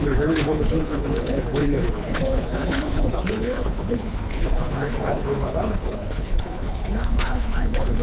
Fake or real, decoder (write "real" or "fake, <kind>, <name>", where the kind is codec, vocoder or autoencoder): fake, codec, HILCodec